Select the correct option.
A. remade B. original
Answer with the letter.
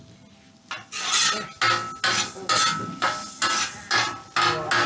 B